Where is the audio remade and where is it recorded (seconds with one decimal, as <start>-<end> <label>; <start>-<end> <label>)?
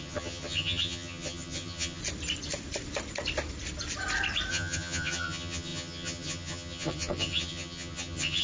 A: 0.0-2.0 remade; 2.0-4.5 recorded; 4.5-8.4 remade